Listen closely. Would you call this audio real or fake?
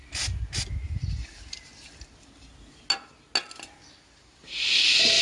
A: real